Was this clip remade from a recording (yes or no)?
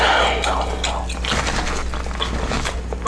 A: no